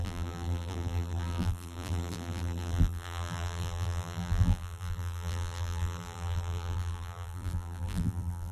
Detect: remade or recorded remade